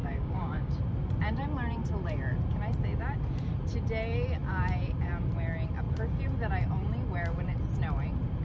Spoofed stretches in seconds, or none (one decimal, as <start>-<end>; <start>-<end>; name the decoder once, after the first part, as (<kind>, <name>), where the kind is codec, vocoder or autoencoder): 0.0-0.8 (codec, DAC)